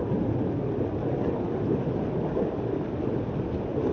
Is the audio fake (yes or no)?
no